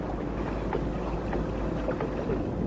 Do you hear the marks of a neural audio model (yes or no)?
no